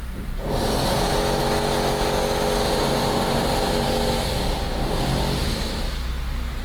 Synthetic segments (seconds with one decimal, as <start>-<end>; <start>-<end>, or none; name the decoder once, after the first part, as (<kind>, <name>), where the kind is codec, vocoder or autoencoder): none